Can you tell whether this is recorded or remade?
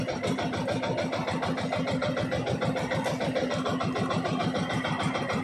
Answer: recorded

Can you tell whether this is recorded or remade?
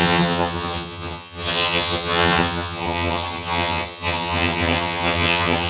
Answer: remade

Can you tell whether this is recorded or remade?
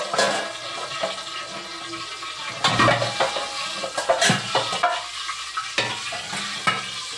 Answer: recorded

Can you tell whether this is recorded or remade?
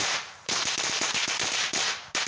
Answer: remade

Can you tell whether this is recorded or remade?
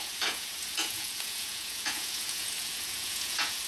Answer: remade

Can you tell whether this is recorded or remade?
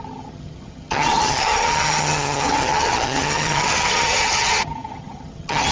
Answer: remade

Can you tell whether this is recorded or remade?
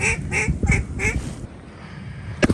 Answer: recorded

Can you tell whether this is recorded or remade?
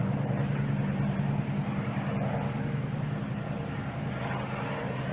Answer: recorded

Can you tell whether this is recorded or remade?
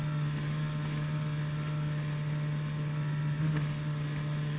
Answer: recorded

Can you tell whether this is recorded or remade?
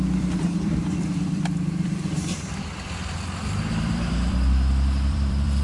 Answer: remade